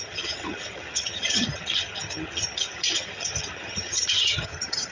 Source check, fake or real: fake